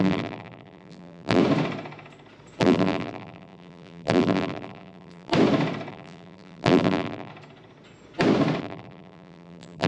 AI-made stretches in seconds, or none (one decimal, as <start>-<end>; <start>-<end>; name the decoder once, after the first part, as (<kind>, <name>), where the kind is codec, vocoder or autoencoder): 0.0-1.4 (vocoder, BigVGAN v2); 2.6-5.3; 5.9-7.3; 8.6-9.9